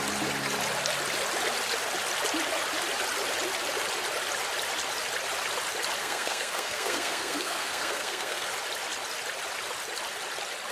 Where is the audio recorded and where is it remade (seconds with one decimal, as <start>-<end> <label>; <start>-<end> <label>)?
0.0-6.0 recorded; 6.0-8.5 remade; 8.5-10.7 recorded